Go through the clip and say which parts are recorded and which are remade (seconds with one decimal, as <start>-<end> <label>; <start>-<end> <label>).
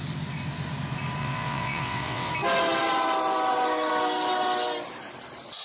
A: 0.0-1.2 recorded; 1.2-2.3 remade; 2.3-5.6 recorded